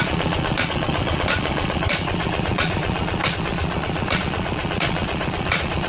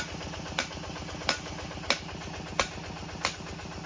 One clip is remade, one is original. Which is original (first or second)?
second